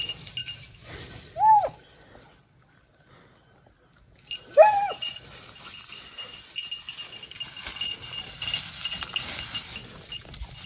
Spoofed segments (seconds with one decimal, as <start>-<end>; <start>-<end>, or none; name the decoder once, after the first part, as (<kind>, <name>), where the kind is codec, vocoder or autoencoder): 0.4-0.9 (autoencoder, DAC-VAE)